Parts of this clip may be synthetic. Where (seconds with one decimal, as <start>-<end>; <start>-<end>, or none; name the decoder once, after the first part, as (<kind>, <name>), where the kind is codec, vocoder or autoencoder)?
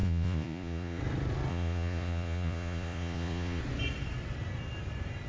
0.0-1.0 (vocoder, Vocos); 1.5-3.6